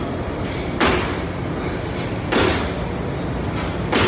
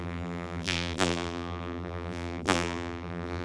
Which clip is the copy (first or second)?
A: second